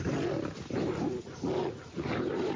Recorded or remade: recorded